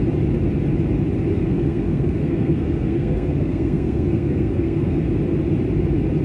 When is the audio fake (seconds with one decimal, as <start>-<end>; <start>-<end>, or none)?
1.3-5.0